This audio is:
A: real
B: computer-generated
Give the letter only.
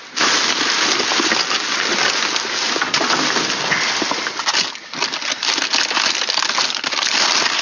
A